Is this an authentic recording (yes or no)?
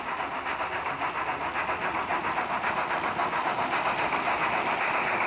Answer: yes